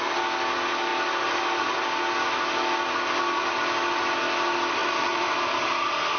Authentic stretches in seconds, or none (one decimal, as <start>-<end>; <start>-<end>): 0.0-4.8